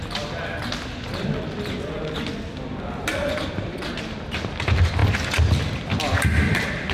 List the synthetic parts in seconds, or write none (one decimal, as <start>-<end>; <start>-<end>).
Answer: none